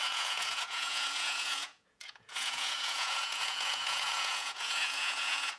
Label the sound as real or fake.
fake